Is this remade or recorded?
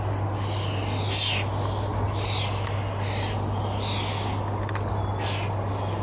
recorded